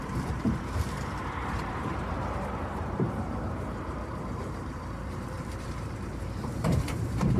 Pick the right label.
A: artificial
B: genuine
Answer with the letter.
A